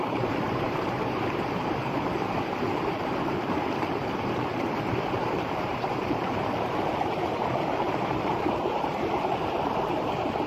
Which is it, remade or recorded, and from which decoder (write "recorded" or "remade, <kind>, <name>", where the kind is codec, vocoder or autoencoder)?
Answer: remade, vocoder, BigVGAN v2